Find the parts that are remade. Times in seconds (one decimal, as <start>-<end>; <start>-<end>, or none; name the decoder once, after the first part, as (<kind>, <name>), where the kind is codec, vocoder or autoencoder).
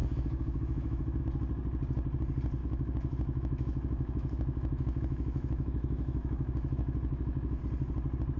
0.0-1.2 (autoencoder, DAC-VAE); 2.6-7.6